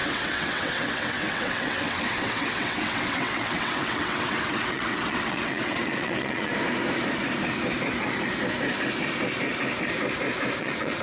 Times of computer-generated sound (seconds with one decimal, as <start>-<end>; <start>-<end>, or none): 0.0-6.5; 10.6-11.0